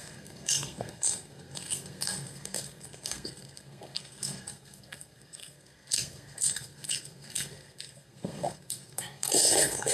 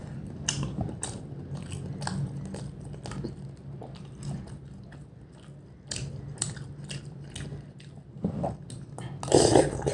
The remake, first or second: first